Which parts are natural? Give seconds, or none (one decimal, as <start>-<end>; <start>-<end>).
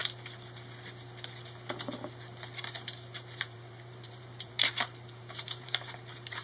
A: 0.0-3.4